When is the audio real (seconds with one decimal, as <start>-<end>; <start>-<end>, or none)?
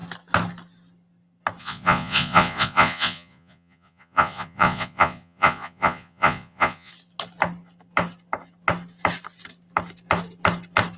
0.0-1.6; 6.9-11.0